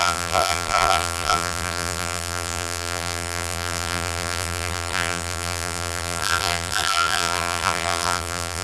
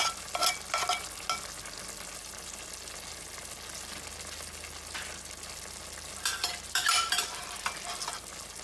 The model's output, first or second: first